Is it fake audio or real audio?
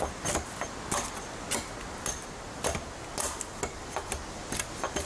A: real